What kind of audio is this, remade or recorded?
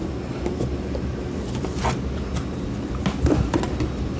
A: recorded